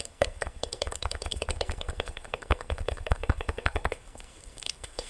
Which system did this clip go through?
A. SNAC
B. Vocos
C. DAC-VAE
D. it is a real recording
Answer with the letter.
A